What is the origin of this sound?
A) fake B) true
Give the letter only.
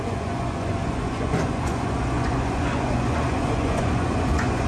A